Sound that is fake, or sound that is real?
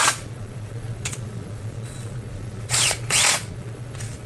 fake